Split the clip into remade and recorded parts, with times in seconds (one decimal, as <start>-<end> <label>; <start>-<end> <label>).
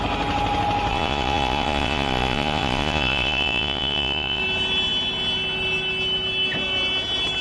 0.0-0.9 recorded; 0.9-4.4 remade; 4.4-7.4 recorded